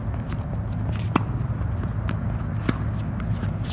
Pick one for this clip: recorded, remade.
recorded